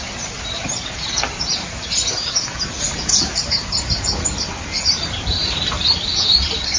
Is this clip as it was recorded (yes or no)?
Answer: no